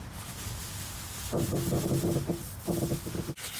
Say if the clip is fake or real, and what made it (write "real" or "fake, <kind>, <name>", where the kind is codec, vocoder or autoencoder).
real